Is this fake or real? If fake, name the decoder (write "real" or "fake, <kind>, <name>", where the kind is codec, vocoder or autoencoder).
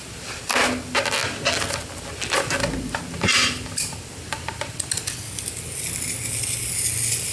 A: real